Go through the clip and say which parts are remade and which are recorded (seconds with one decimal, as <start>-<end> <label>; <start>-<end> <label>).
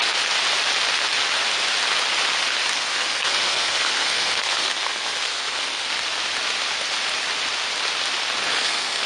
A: 0.0-2.7 recorded; 2.7-5.9 remade; 5.9-8.5 recorded; 8.5-9.1 remade